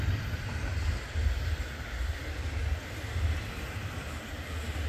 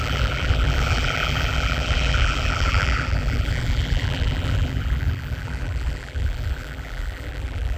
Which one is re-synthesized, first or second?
second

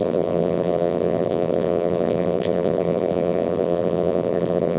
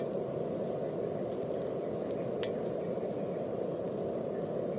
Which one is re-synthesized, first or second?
first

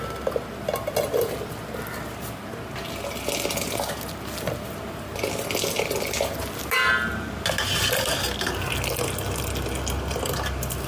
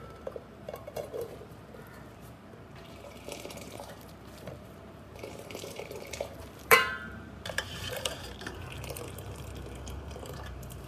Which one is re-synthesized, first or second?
second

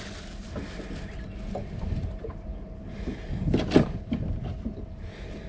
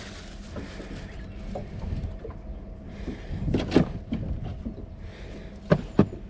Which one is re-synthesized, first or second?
first